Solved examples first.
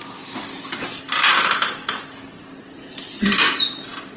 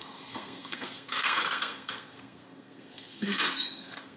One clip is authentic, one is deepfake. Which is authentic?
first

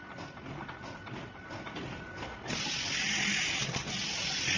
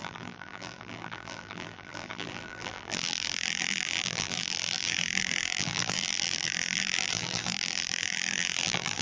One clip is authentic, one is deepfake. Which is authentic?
first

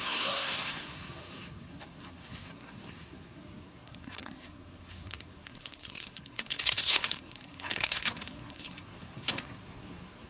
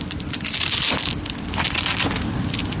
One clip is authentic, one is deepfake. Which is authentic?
second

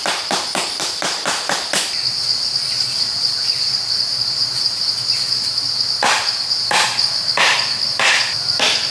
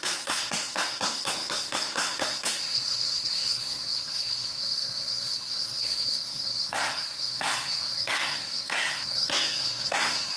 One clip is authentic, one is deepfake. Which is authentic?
first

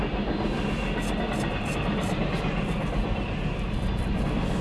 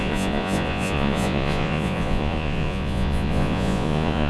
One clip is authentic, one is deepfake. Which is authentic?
first